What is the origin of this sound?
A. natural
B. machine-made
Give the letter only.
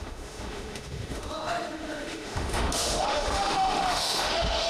B